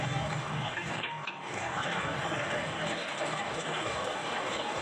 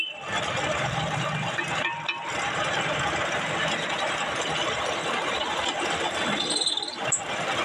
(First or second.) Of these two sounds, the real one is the second